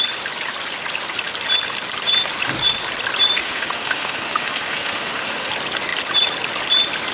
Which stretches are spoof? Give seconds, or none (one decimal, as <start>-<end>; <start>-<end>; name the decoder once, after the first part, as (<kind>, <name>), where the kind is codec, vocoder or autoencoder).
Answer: 3.4-5.5 (autoencoder, DAC-VAE)

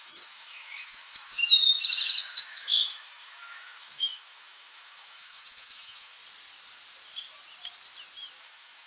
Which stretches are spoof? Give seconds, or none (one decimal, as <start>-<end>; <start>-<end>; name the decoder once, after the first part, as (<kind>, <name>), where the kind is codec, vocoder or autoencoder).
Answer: 0.0-6.2 (autoencoder, DAC-VAE); 8.4-8.9

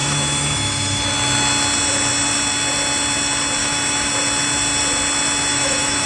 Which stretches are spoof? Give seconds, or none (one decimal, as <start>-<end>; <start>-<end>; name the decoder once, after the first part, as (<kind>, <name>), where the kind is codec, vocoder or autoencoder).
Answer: 0.0-1.0 (autoencoder, DAC-VAE); 3.6-4.1; 5.5-6.1

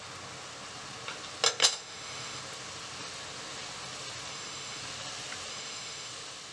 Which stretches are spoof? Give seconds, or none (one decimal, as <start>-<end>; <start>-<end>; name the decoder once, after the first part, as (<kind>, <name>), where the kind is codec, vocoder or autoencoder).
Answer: 1.6-2.4 (autoencoder, DAC-VAE); 4.3-4.8; 5.5-6.1

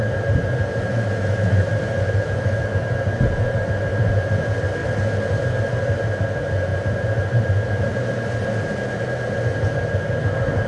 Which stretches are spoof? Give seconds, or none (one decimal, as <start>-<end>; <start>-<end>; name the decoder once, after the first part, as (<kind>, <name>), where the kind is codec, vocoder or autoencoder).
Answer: 0.7-2.6 (autoencoder, DAC-VAE)

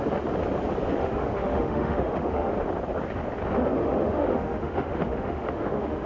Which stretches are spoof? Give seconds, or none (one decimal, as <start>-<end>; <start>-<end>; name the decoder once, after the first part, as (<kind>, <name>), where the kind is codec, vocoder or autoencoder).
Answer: 1.0-2.5 (autoencoder, DAC-VAE); 3.8-6.1

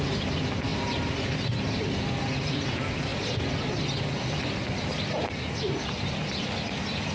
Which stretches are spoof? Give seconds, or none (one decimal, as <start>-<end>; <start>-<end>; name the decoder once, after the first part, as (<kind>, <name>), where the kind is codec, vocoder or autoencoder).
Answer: none